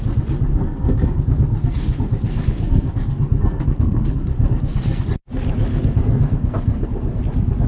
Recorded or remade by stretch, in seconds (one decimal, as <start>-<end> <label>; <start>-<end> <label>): 0.0-0.5 recorded; 0.5-5.0 remade; 5.0-5.7 recorded; 5.7-7.2 remade; 7.2-7.7 recorded